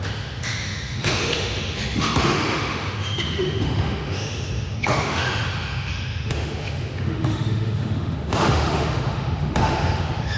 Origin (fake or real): fake